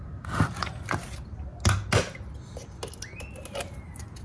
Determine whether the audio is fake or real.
real